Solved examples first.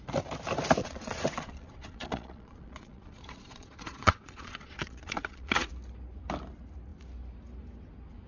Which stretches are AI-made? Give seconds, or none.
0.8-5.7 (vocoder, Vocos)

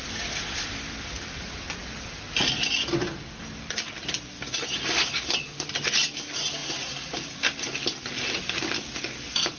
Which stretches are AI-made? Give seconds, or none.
none

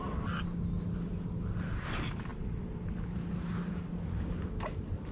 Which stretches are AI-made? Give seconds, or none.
none